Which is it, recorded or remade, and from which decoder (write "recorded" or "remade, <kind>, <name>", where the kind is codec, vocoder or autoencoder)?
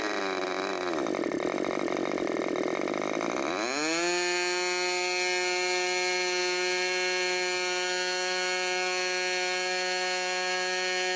recorded